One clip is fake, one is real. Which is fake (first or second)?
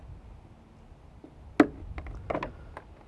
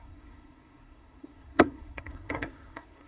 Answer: second